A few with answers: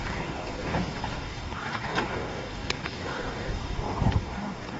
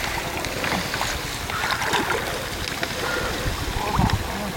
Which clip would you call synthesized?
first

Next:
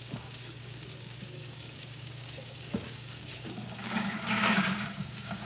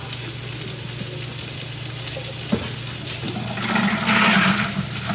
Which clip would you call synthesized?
first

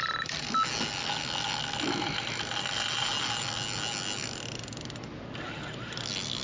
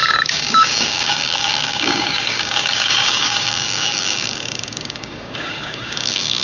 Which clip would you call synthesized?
second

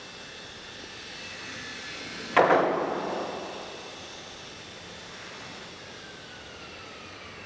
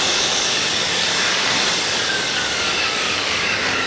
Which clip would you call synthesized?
second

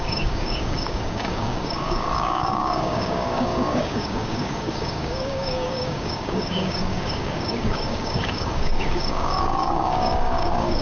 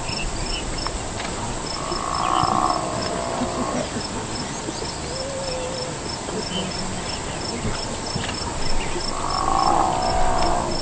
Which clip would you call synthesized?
first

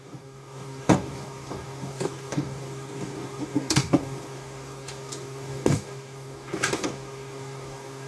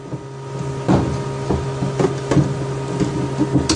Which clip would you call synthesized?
first